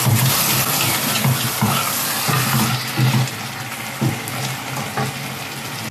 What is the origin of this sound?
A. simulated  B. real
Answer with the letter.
B